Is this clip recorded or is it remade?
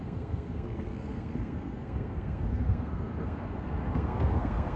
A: remade